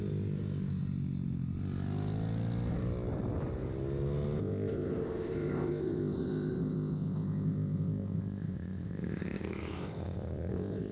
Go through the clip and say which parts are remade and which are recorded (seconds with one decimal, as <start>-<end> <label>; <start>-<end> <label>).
0.0-4.4 recorded; 4.4-10.9 remade